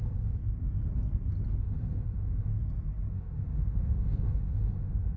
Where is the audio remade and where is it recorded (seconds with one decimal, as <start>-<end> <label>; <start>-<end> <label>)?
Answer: 0.0-0.4 remade; 0.4-1.6 recorded; 1.6-2.5 remade; 2.5-3.1 recorded; 3.1-5.2 remade